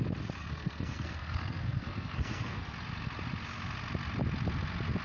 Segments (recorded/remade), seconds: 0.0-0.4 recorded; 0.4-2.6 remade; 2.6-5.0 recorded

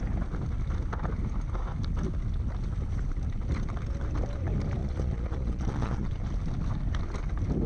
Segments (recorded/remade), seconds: 0.0-4.8 recorded; 4.8-6.1 remade; 6.1-7.7 recorded

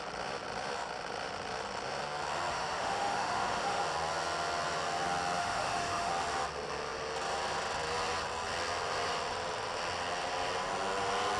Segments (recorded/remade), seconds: 0.0-2.5 recorded; 2.5-3.8 remade; 3.8-5.4 recorded; 5.4-6.1 remade; 6.1-11.4 recorded

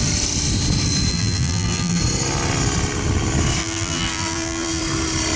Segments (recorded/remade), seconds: 0.0-1.1 recorded; 1.1-2.0 remade; 2.0-3.6 recorded; 3.6-4.8 remade; 4.8-5.4 recorded